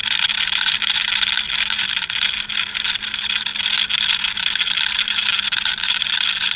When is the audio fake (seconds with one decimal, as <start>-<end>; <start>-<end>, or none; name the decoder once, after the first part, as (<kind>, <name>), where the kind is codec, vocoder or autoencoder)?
0.0-3.5 (vocoder, BigVGAN v2); 4.1-6.6